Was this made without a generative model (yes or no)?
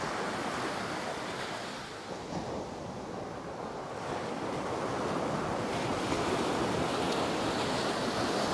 yes